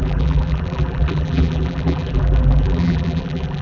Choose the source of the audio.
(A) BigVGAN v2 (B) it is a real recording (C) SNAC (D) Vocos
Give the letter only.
A